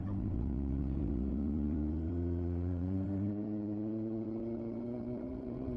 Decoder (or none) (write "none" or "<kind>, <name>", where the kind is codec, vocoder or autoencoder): vocoder, WaveNeXt